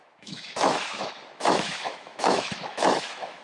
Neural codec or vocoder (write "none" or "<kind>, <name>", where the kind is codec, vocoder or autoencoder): autoencoder, DAC-VAE